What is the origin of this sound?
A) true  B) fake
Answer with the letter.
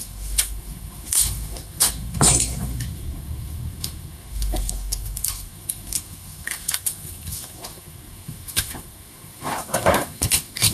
B